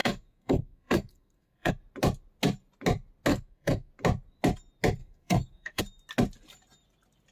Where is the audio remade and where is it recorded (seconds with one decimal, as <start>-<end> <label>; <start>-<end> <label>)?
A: 0.0-1.7 remade; 1.7-3.3 recorded; 3.3-3.9 remade; 3.9-5.0 recorded; 5.0-5.8 remade; 5.8-7.3 recorded